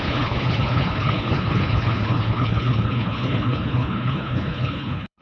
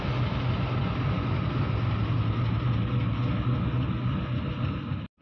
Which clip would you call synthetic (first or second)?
first